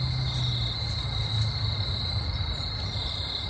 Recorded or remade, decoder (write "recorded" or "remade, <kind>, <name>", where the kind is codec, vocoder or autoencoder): recorded